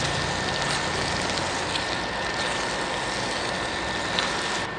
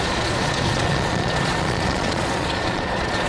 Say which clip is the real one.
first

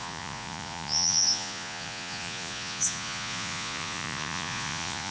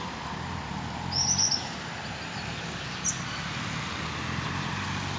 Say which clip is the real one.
second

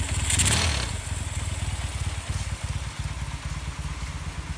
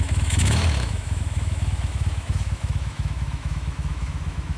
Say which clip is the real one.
first